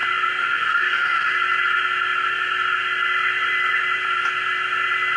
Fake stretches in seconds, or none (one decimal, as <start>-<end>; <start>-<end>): 0.4-1.3